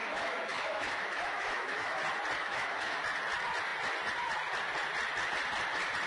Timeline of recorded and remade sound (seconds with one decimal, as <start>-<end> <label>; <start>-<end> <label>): 0.0-2.0 remade; 2.0-2.4 recorded; 2.4-3.0 remade; 3.0-6.1 recorded